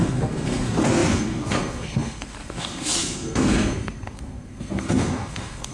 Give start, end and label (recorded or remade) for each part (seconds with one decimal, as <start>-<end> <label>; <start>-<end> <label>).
0.0-5.7 remade